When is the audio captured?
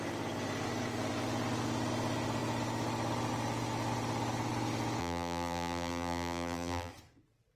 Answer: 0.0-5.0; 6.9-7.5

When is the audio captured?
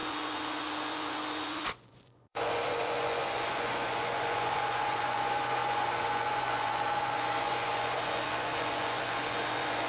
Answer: none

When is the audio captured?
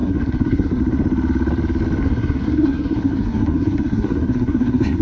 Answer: 0.8-2.0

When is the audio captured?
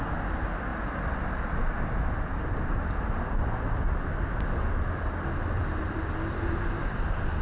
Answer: 0.0-7.4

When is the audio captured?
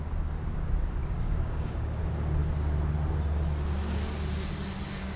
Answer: 0.0-1.0; 2.0-5.2